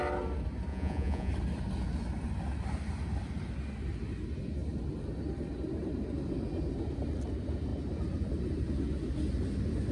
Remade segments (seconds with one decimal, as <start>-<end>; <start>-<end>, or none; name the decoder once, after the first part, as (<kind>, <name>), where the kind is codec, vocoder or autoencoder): 0.7-1.3 (vocoder, Vocos)